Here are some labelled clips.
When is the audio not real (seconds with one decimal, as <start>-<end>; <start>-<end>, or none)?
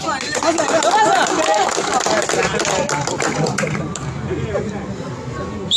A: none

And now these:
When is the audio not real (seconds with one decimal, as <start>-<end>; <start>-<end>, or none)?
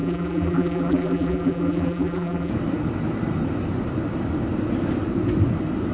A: 0.0-2.5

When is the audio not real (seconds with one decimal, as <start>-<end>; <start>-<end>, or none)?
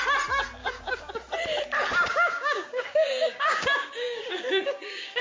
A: 0.6-1.1; 2.1-5.2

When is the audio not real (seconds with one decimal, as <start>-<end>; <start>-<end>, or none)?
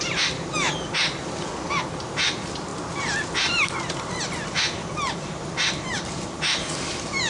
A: none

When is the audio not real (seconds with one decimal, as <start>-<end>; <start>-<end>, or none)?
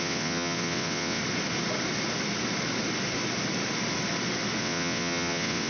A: 0.0-1.2; 4.6-5.7